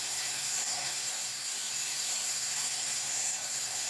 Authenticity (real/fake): fake